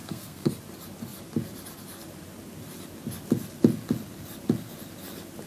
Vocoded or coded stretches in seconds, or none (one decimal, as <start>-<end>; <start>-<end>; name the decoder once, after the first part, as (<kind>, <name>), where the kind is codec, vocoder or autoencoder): 0.0-0.5 (codec, SNAC)